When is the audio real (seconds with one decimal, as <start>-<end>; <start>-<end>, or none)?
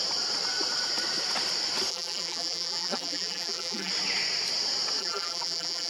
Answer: 0.0-1.9; 3.9-5.0